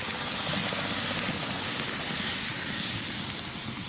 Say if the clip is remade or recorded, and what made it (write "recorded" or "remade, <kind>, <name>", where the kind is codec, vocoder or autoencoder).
recorded